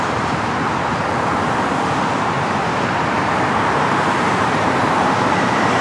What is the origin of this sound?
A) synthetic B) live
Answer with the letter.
A